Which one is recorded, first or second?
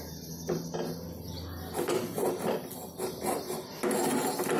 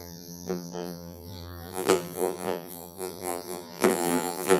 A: first